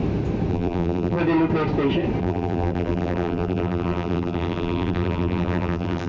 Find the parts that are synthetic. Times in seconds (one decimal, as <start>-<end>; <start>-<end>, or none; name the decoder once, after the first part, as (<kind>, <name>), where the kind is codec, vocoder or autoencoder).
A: 0.5-1.2 (vocoder, BigVGAN v2); 2.2-6.1